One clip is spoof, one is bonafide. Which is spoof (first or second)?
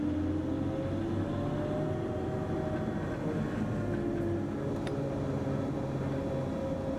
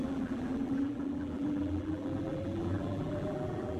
second